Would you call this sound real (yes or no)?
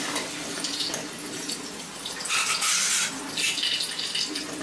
yes